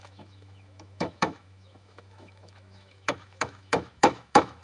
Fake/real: fake